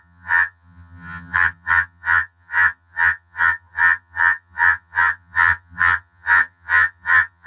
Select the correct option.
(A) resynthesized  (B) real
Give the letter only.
A